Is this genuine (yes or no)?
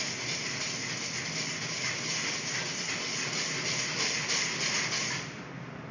yes